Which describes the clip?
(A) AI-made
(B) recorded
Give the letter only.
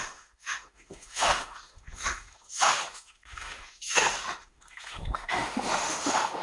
A